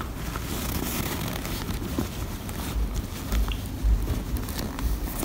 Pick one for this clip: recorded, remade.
recorded